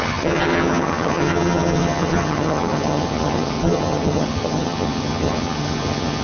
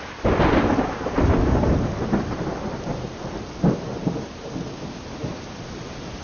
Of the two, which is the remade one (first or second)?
first